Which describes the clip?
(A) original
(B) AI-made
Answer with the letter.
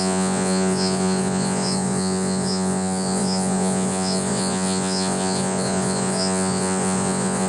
B